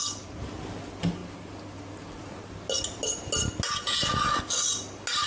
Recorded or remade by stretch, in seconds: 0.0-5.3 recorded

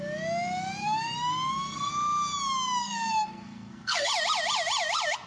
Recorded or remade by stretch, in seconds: 0.0-0.8 recorded; 0.8-1.9 remade; 1.9-2.8 recorded; 2.8-4.1 remade; 4.1-5.3 recorded

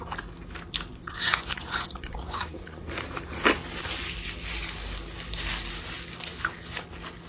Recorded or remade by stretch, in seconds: 0.0-0.9 recorded; 0.9-2.8 remade; 2.8-7.3 recorded

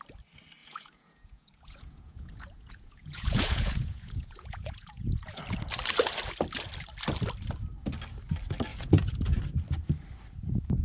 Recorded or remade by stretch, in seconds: 0.0-0.6 recorded; 0.6-5.4 remade; 5.4-8.7 recorded; 8.7-9.4 remade; 9.4-10.8 recorded